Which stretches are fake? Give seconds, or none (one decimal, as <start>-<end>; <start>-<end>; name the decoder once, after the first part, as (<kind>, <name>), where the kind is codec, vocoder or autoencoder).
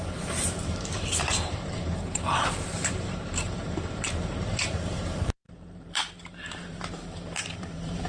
0.0-8.1 (vocoder, BigVGAN v2)